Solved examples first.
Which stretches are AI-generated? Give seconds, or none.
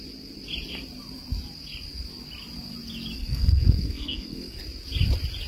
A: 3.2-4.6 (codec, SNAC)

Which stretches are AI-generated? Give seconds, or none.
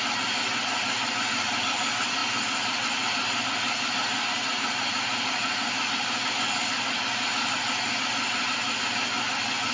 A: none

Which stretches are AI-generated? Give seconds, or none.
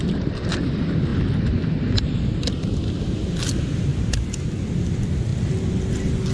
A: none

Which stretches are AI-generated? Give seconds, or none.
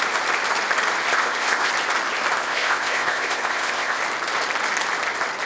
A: 1.1-1.7 (codec, ZipCodec); 2.4-4.0